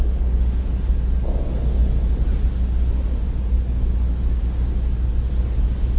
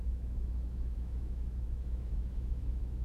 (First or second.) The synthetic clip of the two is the second